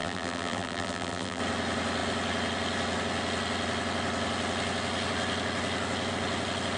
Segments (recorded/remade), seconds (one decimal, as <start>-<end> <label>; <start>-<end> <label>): 0.0-1.4 remade; 1.4-6.8 recorded